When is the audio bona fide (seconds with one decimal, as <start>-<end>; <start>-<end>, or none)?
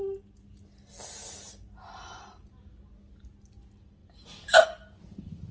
0.0-4.0; 5.0-5.5